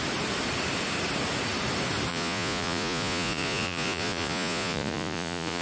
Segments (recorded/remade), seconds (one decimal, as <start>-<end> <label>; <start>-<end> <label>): 0.0-2.1 recorded; 2.1-5.6 remade